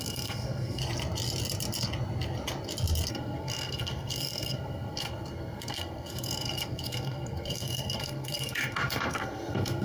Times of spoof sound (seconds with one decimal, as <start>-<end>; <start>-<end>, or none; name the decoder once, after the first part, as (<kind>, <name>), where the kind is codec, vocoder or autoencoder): 0.0-0.8 (codec, SNAC); 3.1-9.8